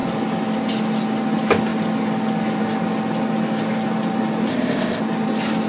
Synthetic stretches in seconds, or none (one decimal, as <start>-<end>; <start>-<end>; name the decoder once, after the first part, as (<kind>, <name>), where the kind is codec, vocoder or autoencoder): 4.5-5.0 (codec, ZipCodec)